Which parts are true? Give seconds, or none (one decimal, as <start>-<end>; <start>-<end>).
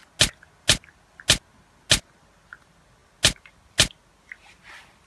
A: 0.0-5.1